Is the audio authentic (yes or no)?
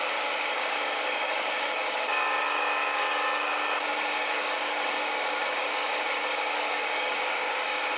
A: no